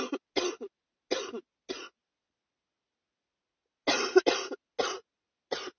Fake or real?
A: real